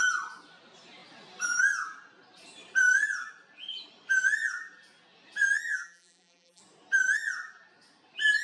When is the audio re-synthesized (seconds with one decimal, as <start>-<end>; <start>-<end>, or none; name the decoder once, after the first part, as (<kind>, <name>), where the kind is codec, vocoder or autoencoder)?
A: 5.7-6.6 (vocoder, BigVGAN v2)